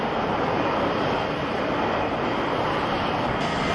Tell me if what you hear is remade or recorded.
recorded